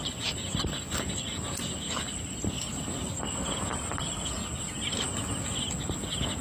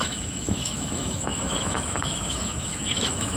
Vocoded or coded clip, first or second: second